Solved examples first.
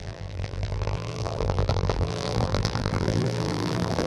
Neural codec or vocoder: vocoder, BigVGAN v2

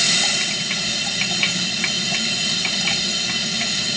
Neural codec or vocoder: none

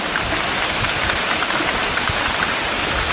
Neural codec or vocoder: vocoder, BigVGAN v2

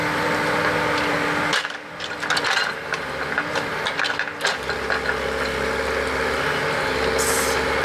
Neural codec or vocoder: none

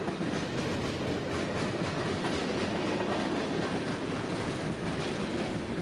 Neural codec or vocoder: none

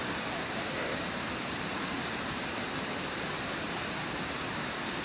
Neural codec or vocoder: vocoder, BigVGAN v2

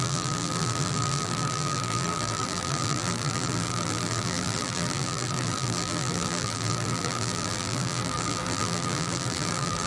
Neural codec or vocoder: vocoder, BigVGAN v2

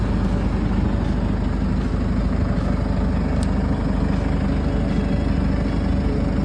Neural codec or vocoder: none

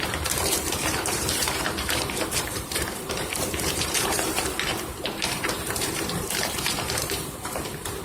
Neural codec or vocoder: vocoder, BigVGAN v2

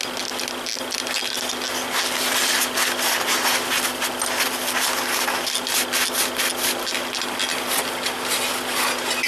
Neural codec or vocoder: none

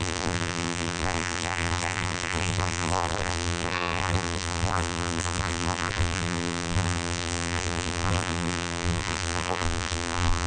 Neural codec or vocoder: vocoder, BigVGAN v2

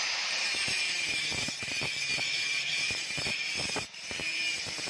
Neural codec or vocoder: vocoder, BigVGAN v2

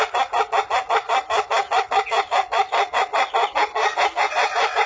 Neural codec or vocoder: none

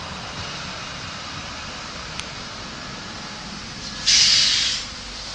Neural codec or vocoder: vocoder, BigVGAN v2